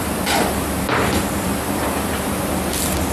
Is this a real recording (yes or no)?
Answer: yes